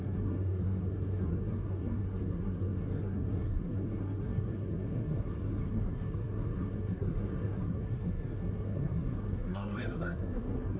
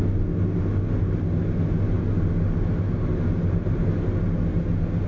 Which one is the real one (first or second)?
second